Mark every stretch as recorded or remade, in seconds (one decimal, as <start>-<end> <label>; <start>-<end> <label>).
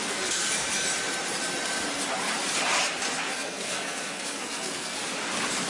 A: 0.0-0.4 remade; 0.4-3.2 recorded; 3.2-5.0 remade; 5.0-5.7 recorded